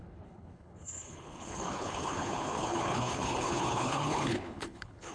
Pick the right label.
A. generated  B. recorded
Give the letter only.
A